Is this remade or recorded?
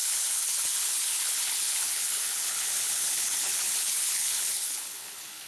remade